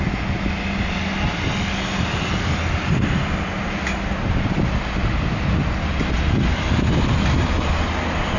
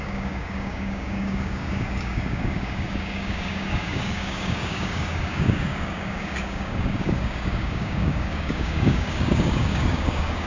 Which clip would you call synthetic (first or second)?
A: second